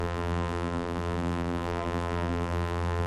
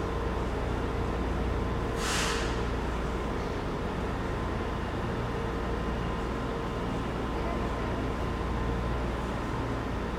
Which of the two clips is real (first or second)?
second